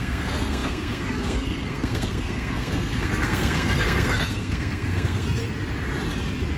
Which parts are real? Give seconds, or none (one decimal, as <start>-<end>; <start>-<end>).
5.4-6.6